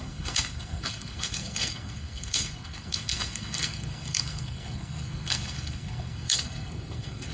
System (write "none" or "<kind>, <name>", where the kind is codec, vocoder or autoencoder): codec, SNAC